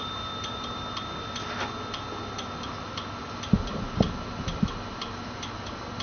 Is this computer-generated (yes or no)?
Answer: no